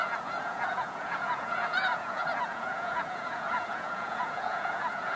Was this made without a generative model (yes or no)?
no